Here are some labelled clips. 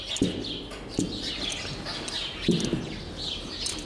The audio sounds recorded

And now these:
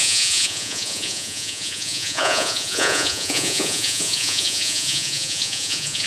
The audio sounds remade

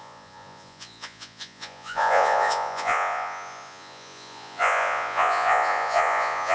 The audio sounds remade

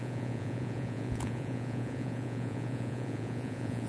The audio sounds remade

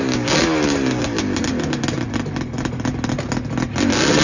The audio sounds recorded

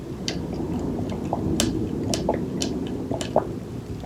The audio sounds recorded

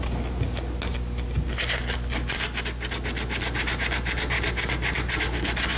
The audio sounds recorded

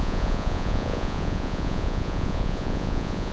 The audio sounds remade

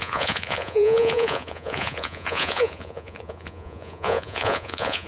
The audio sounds remade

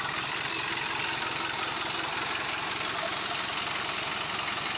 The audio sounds recorded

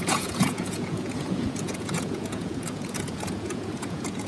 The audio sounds remade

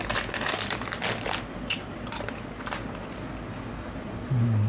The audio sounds recorded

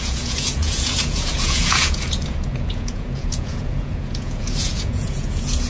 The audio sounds remade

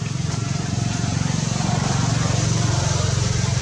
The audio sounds recorded